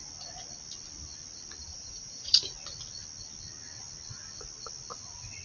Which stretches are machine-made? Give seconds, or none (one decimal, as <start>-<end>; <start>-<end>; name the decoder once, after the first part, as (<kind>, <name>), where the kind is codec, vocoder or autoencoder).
1.6-2.5 (vocoder, BigVGAN v2)